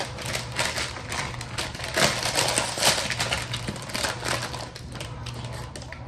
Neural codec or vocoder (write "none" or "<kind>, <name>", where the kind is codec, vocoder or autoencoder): none